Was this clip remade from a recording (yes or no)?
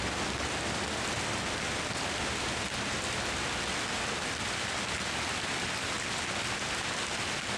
no